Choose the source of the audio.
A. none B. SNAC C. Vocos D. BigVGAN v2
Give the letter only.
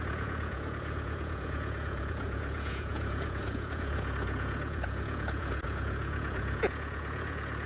C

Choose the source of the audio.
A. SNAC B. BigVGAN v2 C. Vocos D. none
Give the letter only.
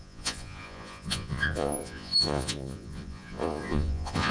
C